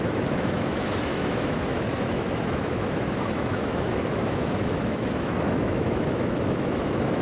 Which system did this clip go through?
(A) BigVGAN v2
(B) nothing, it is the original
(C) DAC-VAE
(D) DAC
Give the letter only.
C